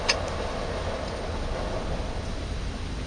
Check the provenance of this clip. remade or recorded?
recorded